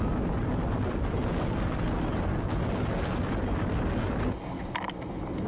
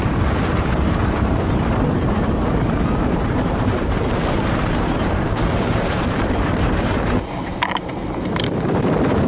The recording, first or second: first